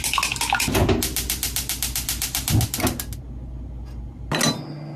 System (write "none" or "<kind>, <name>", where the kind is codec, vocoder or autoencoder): none